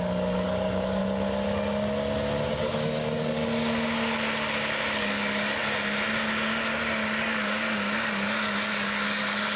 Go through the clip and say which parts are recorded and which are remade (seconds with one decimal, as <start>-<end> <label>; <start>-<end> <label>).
0.0-1.0 remade; 1.0-2.5 recorded; 2.5-3.4 remade; 3.4-5.0 recorded; 5.0-5.6 remade; 5.6-7.2 recorded; 7.2-9.6 remade